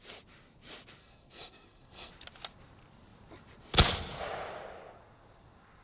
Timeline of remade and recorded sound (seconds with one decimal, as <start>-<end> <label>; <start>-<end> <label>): 0.0-1.0 recorded; 1.0-2.1 remade; 2.1-5.8 recorded